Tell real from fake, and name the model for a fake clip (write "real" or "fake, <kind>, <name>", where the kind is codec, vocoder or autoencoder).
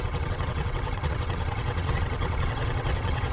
fake, vocoder, WaveNeXt